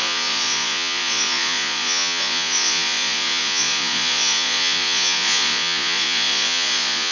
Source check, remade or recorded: remade